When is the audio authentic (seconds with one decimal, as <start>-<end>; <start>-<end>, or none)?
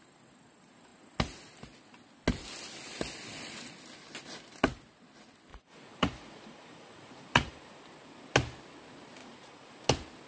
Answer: 0.0-5.5; 7.8-9.2; 9.8-10.3